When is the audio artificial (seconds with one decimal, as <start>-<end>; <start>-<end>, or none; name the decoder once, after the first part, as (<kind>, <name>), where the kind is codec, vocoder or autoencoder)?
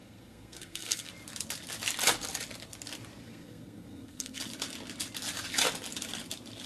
0.0-1.1 (codec, SNAC); 3.2-4.4